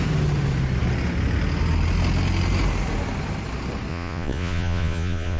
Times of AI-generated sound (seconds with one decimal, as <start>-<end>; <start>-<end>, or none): 3.9-5.4

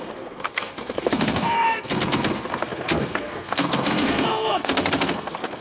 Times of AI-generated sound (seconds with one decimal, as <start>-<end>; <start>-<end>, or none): 0.0-5.6

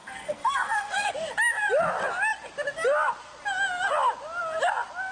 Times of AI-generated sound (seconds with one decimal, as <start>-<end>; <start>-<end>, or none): 0.0-1.1

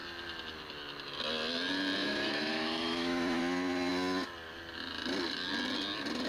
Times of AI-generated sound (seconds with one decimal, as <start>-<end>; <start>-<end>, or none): 2.0-3.4

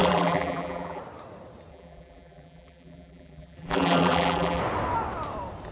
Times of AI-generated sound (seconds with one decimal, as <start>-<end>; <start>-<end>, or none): 0.0-1.0; 1.7-4.6